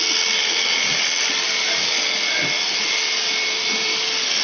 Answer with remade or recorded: remade